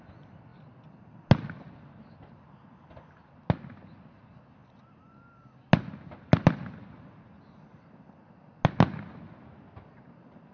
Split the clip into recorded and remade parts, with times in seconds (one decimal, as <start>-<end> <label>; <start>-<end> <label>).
0.0-10.5 recorded